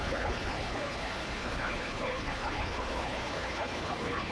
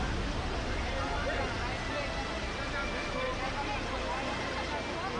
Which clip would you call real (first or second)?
second